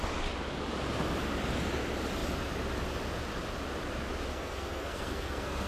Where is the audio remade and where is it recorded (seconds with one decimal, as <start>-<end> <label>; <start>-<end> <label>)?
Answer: 0.0-4.3 recorded; 4.3-5.7 remade